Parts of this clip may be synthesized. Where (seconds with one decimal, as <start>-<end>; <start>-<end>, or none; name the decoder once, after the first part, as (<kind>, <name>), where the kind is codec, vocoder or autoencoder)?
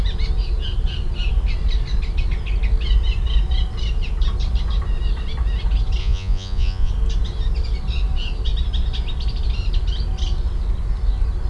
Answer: 6.0-6.9 (vocoder, Vocos)